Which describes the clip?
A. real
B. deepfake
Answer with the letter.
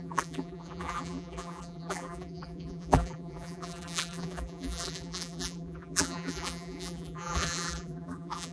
B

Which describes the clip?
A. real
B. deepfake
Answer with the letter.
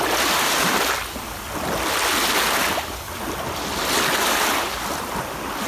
A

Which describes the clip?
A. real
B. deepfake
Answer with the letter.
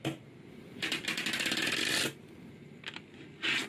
A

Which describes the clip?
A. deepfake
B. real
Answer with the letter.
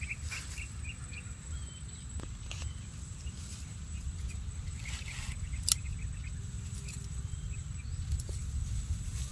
B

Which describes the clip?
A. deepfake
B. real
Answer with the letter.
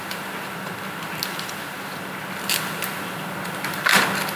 B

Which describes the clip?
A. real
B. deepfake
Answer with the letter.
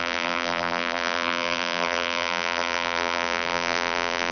B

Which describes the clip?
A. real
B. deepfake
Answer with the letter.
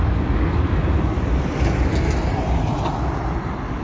A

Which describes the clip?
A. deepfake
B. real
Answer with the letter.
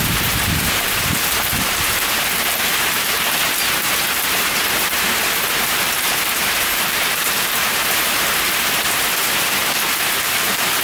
A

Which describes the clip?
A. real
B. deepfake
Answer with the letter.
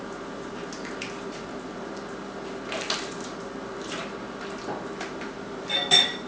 A